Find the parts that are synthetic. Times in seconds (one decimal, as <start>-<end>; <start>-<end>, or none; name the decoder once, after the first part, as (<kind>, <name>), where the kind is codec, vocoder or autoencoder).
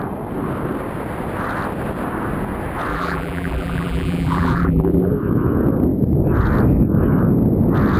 2.9-5.1 (vocoder, BigVGAN v2)